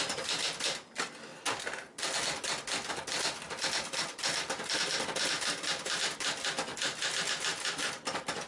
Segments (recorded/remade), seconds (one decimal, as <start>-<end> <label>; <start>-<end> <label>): 0.0-8.5 recorded